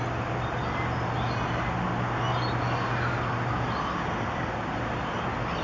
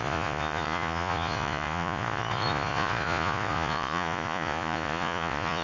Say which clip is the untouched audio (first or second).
first